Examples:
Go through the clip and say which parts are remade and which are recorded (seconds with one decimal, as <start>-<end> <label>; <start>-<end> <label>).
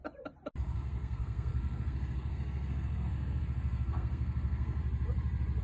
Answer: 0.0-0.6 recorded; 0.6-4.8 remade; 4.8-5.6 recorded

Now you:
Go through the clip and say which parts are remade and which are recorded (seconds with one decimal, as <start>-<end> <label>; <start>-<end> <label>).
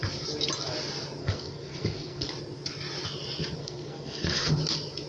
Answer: 0.0-1.2 recorded; 1.2-2.3 remade; 2.3-3.6 recorded; 3.6-4.5 remade; 4.5-5.1 recorded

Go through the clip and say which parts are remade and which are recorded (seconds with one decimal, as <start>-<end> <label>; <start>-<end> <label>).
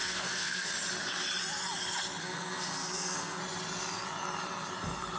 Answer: 0.0-0.7 remade; 0.7-2.2 recorded; 2.2-3.4 remade; 3.4-5.2 recorded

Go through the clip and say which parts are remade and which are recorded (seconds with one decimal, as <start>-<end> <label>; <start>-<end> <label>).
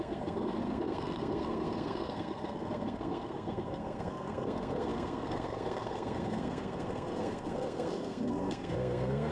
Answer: 0.0-9.3 remade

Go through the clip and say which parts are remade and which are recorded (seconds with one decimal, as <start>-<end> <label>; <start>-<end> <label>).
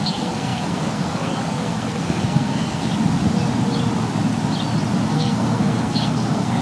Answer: 0.0-2.9 remade; 2.9-5.1 recorded; 5.1-6.6 remade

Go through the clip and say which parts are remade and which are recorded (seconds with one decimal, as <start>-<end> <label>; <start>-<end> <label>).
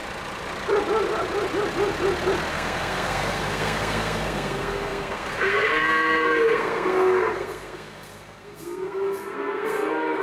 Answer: 0.0-2.5 recorded; 2.5-10.2 remade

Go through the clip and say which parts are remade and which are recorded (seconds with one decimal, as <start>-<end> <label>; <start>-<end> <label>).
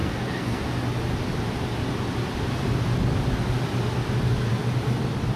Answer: 0.0-0.6 remade; 0.6-5.4 recorded